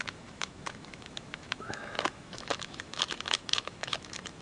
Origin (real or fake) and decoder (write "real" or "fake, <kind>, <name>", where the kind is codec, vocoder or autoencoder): fake, autoencoder, DAC-VAE